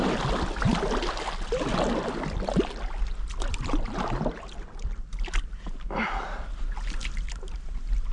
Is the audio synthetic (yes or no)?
no